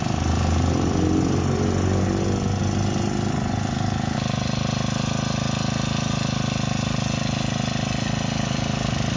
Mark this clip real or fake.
real